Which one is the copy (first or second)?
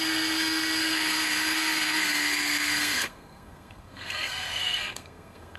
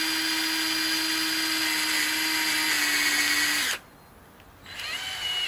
first